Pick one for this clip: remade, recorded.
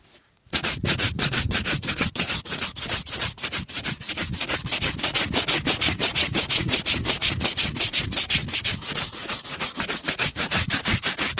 remade